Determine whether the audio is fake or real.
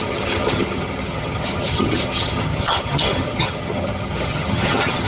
fake